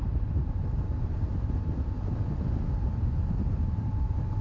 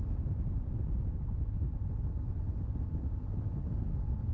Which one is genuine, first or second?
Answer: second